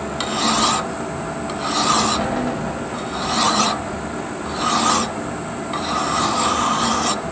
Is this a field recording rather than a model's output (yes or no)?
yes